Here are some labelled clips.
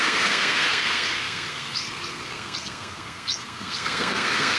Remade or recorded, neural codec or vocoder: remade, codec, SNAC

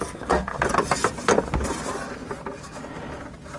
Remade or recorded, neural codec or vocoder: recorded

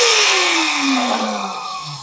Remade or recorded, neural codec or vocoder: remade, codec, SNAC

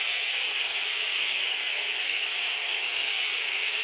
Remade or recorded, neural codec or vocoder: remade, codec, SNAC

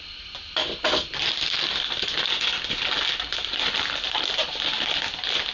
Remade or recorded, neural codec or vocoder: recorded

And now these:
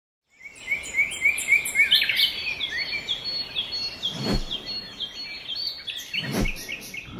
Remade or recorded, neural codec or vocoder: recorded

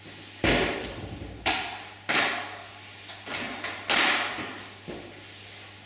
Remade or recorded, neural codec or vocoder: recorded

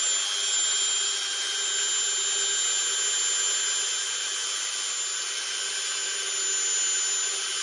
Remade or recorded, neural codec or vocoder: recorded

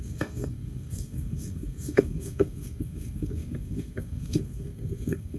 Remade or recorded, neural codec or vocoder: remade, codec, SNAC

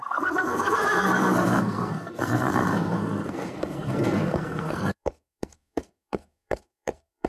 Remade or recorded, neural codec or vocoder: remade, codec, SNAC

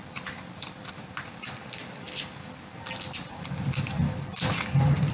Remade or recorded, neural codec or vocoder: recorded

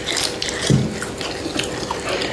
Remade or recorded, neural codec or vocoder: recorded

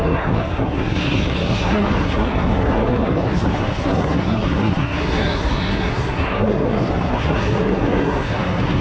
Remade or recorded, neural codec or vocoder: remade, codec, SNAC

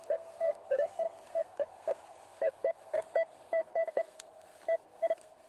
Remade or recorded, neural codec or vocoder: remade, codec, SNAC